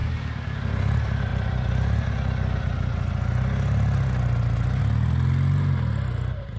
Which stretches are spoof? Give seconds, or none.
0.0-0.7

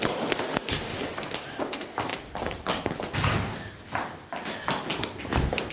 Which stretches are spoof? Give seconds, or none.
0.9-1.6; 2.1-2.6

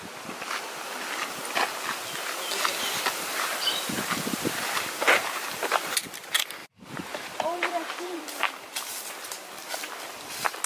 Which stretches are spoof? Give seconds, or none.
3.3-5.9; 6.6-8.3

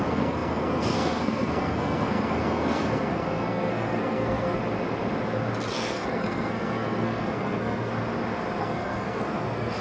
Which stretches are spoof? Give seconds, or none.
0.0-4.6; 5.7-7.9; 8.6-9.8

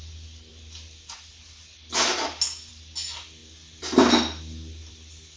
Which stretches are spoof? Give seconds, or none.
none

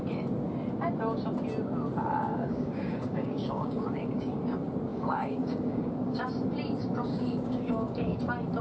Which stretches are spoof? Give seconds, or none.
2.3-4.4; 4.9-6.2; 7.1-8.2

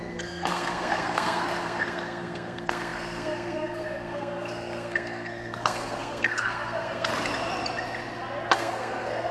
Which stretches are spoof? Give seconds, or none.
0.0-7.1; 8.5-9.3